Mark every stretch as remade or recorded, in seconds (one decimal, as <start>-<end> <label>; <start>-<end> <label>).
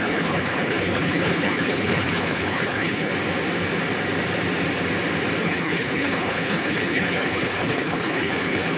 0.0-3.1 remade; 3.1-5.4 recorded; 5.4-8.8 remade